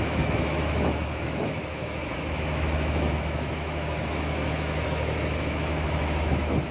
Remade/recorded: remade